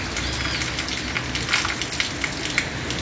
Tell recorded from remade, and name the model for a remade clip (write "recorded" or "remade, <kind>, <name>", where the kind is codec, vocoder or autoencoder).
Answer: recorded